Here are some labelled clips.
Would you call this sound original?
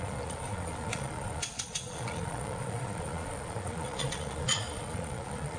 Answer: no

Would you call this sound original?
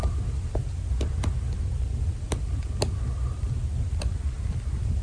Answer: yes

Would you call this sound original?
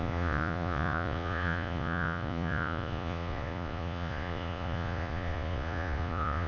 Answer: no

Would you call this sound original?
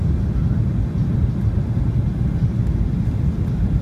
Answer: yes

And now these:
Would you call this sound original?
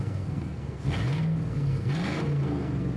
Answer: no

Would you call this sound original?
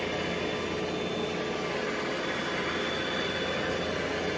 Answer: yes